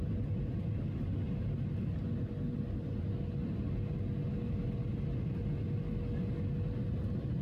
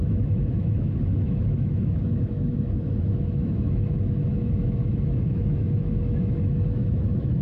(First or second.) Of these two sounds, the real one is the first